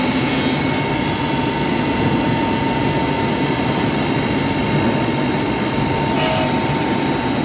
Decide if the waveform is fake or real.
real